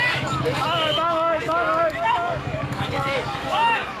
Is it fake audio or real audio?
fake